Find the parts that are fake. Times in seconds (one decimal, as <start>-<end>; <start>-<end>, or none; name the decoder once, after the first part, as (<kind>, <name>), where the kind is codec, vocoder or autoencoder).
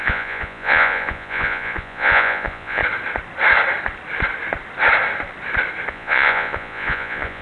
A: 0.0-2.8 (vocoder, Vocos); 5.9-7.4